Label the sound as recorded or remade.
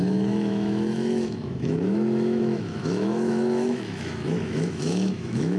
remade